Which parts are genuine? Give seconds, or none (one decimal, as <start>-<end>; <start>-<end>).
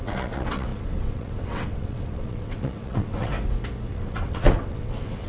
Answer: 3.3-3.9